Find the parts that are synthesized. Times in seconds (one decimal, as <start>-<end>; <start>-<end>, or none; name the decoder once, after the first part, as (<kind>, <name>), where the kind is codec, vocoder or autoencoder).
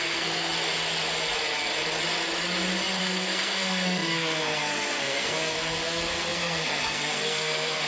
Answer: 0.0-0.5 (codec, SNAC); 3.0-7.9